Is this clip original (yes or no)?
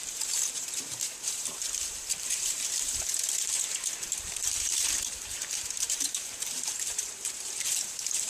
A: no